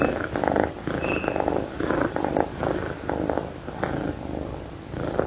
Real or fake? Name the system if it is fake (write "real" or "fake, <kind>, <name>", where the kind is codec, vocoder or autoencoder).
real